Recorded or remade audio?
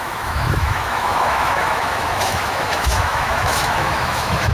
remade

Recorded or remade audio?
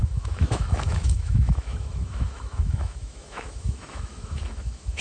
remade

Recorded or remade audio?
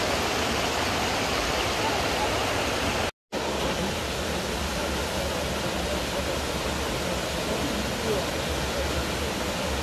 recorded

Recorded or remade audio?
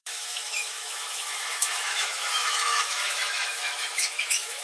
remade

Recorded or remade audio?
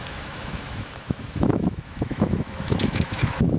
remade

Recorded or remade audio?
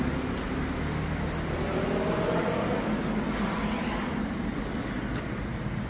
recorded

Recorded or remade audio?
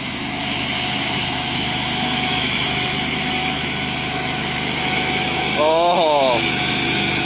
remade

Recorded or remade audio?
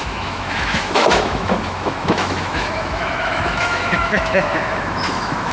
remade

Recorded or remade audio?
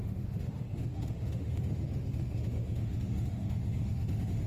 remade